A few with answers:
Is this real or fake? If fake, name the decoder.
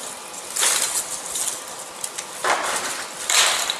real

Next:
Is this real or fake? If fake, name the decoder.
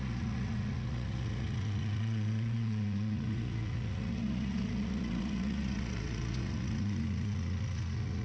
fake, vocoder, Vocos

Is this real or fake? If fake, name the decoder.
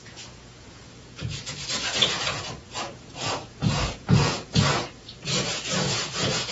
fake, vocoder, Vocos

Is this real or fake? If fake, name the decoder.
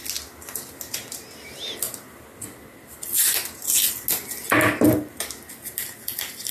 real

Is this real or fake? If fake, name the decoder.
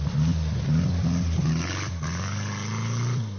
real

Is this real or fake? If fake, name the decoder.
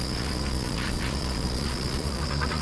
fake, vocoder, Vocos